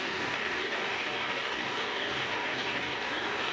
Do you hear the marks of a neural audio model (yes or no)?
yes